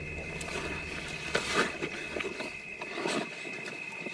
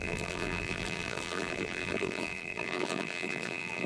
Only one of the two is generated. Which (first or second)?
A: second